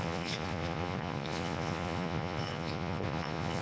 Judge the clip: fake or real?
fake